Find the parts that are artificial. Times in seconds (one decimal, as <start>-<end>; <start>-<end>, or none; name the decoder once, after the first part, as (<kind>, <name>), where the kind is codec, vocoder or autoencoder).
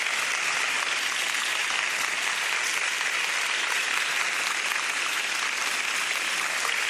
none